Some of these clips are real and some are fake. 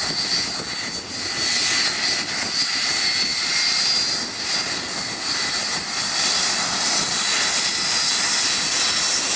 real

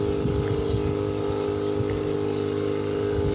real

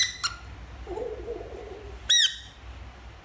real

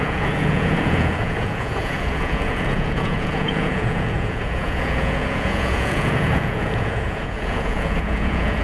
fake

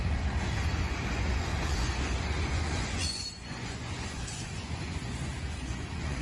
fake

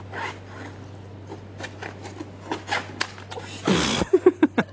real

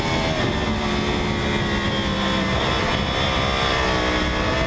real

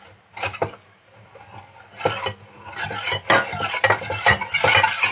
real